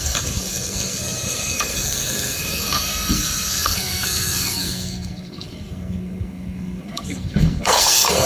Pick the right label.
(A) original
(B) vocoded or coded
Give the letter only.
B